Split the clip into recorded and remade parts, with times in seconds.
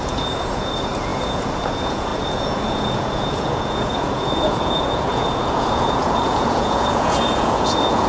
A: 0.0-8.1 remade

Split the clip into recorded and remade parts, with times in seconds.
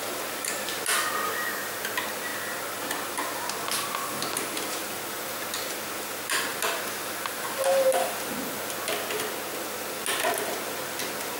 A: 0.0-11.4 recorded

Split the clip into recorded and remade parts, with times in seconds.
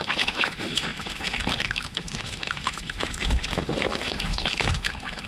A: 0.0-5.3 remade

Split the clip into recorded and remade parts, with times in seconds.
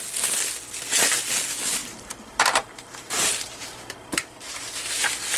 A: 0.0-1.8 recorded; 1.8-5.0 remade; 5.0-5.4 recorded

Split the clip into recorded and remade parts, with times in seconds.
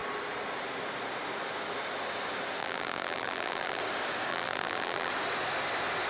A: 0.0-2.6 recorded; 2.6-3.8 remade; 3.8-4.3 recorded; 4.3-5.1 remade; 5.1-6.1 recorded